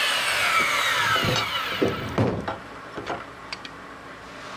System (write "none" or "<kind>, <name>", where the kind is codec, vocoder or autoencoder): vocoder, BigVGAN v2